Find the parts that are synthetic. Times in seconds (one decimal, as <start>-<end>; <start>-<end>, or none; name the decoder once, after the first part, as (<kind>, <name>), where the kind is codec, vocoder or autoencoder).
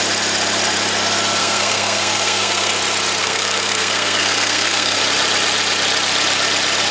1.4-2.7 (codec, SNAC); 3.2-5.0